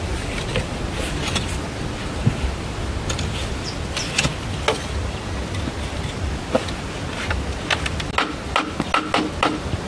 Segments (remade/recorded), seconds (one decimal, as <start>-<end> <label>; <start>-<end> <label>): 0.0-9.9 recorded